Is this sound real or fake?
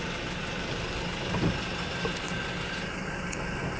fake